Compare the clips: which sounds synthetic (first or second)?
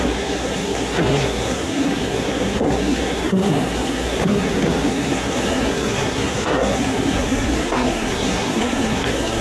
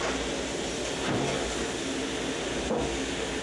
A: first